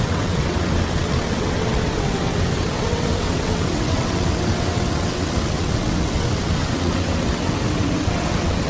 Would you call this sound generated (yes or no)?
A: yes